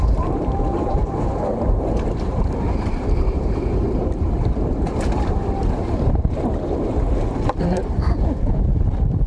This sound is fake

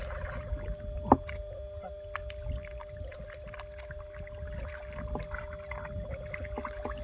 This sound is real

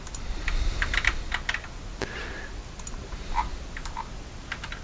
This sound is real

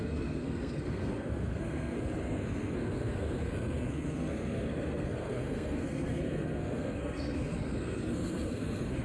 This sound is fake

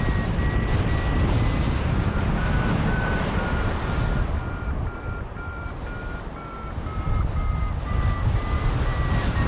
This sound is real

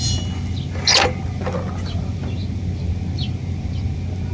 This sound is real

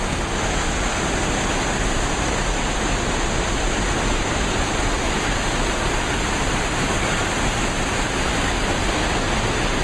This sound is real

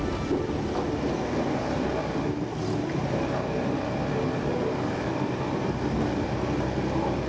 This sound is real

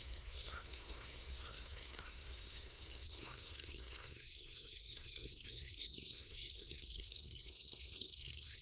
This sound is fake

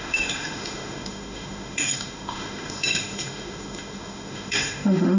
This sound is fake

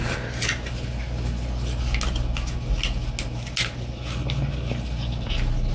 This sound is real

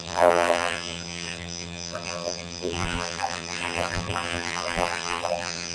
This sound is fake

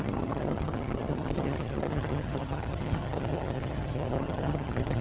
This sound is fake